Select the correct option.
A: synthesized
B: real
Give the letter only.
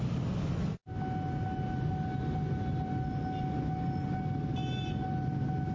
B